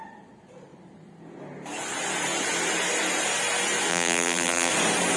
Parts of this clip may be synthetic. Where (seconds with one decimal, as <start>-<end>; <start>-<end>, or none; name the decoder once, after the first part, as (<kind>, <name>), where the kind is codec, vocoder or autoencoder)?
3.9-4.7 (vocoder, BigVGAN v2)